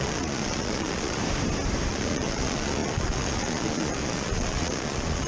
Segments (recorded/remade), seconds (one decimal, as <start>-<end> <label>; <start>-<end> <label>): 0.0-1.2 remade; 1.2-1.9 recorded; 1.9-5.3 remade